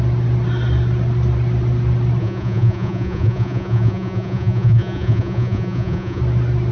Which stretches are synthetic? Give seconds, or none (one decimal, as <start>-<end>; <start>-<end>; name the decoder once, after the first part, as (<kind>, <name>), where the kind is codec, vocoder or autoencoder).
2.2-6.2 (vocoder, Vocos)